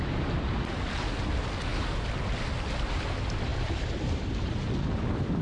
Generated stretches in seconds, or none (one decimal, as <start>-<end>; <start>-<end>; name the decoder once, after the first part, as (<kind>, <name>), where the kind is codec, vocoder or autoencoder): 0.0-1.7 (vocoder, BigVGAN v2); 2.9-5.4

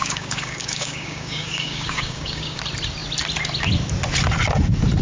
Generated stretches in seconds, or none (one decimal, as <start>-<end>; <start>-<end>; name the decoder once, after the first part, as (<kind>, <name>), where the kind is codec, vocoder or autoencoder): 0.0-2.6 (codec, DAC)

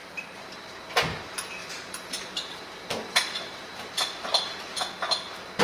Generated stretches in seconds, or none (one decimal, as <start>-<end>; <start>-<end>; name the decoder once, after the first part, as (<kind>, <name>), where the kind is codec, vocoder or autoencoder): 0.0-0.6 (vocoder, BigVGAN v2); 1.6-4.6

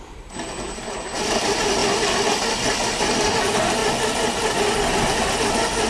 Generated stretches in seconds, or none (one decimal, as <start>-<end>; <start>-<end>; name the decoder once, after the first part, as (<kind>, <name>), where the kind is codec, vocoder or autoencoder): 0.0-1.8 (vocoder, BigVGAN v2); 3.0-3.8; 5.5-5.9

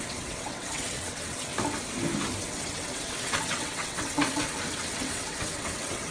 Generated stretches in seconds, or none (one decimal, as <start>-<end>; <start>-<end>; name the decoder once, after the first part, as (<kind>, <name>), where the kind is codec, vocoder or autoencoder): 0.0-1.5 (vocoder, WaveNeXt); 2.4-6.1